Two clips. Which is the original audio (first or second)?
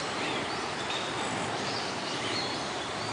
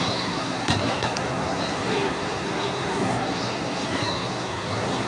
first